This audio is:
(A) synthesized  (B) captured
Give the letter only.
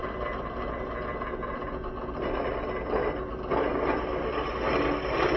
B